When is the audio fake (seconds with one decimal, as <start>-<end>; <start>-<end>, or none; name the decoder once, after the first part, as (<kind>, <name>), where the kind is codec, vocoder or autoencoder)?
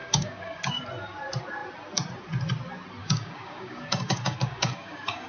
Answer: 0.0-0.8 (codec, DAC); 3.0-5.3